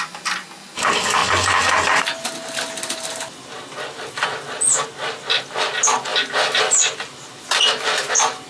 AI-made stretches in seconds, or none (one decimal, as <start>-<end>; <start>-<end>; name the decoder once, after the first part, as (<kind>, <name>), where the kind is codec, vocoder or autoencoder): none